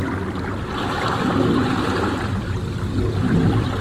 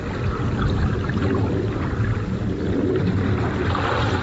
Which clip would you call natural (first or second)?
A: first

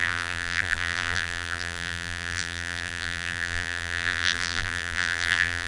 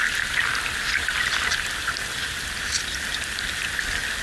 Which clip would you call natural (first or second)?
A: second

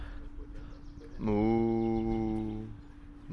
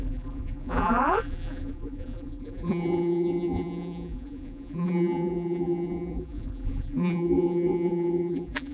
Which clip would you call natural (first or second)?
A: first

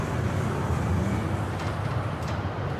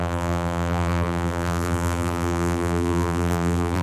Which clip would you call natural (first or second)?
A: first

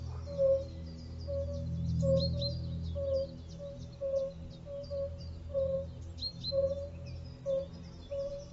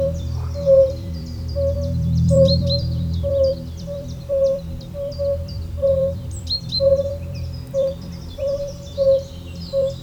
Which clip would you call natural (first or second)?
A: first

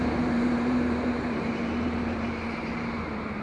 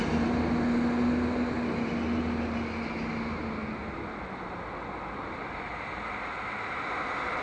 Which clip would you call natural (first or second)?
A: second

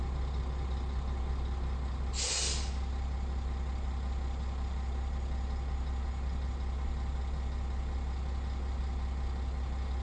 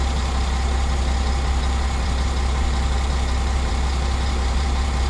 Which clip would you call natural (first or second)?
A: first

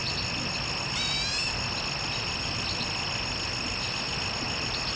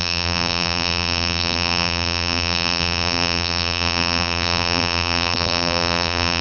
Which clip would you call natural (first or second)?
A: first